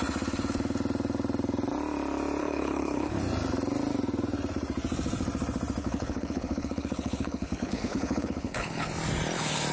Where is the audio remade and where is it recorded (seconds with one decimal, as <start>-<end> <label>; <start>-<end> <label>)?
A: 0.0-2.4 recorded; 2.4-3.2 remade; 3.2-5.8 recorded; 5.8-8.9 remade; 8.9-9.7 recorded